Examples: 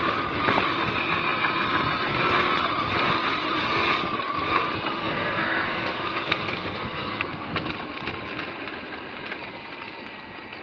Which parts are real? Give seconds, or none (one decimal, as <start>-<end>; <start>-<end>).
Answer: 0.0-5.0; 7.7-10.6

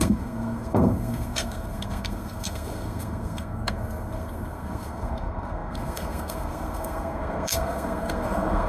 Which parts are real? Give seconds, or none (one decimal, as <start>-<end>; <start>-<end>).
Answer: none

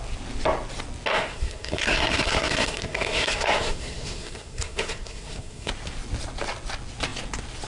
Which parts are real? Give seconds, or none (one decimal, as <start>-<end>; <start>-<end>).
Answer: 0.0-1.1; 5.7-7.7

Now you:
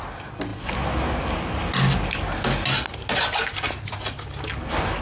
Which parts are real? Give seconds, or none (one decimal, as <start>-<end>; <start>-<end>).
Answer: 0.0-5.0

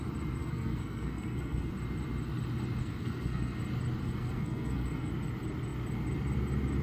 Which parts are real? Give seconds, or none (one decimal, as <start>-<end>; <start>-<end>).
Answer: 0.0-0.4; 1.7-2.8; 3.6-4.0; 5.1-6.8

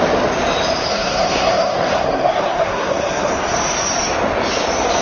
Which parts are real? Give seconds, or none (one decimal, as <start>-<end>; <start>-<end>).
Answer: 0.0-0.9; 3.3-5.0

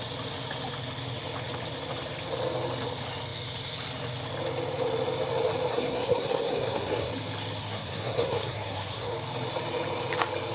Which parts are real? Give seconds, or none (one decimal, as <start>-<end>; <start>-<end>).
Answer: 0.0-5.7; 7.1-7.6; 9.1-10.5